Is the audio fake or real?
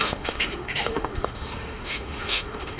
fake